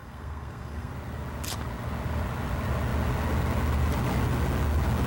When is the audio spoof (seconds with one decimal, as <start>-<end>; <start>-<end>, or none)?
0.0-0.9